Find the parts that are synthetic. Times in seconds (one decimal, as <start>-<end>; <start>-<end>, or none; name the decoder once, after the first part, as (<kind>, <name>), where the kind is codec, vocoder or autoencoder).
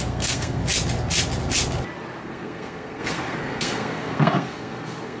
0.0-0.6 (codec, SNAC); 2.2-5.2